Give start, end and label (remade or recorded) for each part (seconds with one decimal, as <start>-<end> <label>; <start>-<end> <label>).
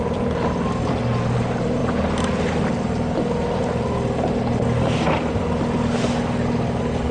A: 0.0-7.1 recorded